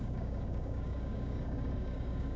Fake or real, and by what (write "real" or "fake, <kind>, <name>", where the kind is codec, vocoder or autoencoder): fake, codec, DAC